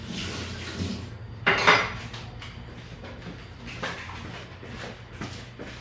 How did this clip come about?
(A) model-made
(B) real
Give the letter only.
B